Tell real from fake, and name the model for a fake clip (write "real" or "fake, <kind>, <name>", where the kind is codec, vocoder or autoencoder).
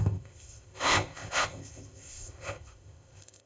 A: fake, codec, ZipCodec